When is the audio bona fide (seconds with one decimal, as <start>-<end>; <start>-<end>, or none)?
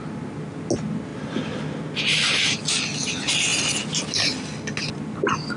0.0-5.6